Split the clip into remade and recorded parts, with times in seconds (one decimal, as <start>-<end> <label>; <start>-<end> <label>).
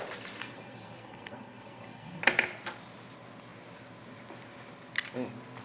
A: 0.0-0.4 recorded; 0.4-2.2 remade; 2.2-5.6 recorded